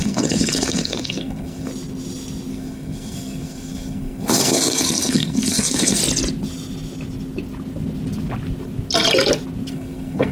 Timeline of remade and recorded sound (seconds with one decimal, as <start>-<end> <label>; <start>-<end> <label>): 0.0-1.7 remade; 1.7-2.5 recorded; 2.5-6.0 remade; 6.0-9.7 recorded; 9.7-10.3 remade